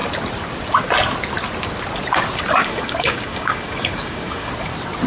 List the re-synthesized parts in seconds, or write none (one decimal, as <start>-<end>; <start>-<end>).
2.6-4.5